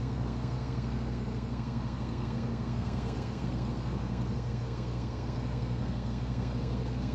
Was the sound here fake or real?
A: fake